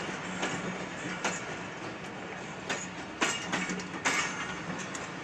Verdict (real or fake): real